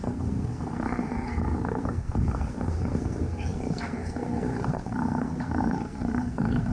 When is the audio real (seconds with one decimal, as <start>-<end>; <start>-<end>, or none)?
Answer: none